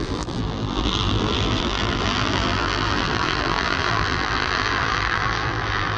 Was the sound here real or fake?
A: fake